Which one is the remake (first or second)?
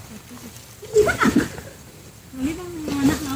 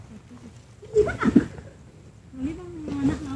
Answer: first